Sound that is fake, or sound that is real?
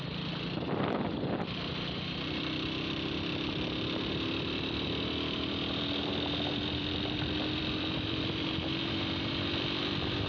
fake